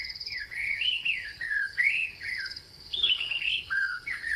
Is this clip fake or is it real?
fake